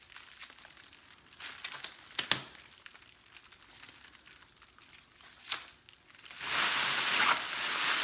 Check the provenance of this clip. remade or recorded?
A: recorded